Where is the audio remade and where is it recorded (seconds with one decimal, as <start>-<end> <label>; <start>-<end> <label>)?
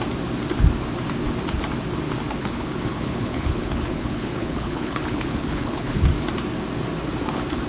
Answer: 0.0-2.4 recorded; 2.4-6.0 remade; 6.0-7.7 recorded